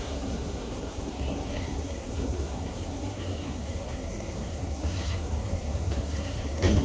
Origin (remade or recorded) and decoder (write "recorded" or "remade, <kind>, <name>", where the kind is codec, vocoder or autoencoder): remade, codec, SNAC